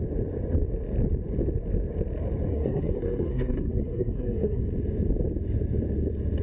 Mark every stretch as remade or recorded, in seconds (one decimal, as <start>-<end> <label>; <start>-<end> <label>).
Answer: 0.0-2.5 recorded; 2.5-4.6 remade; 4.6-6.4 recorded